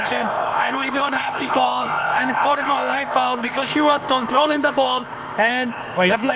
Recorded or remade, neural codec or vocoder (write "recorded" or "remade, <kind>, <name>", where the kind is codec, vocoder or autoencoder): remade, codec, ZipCodec